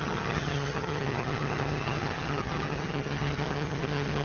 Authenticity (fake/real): fake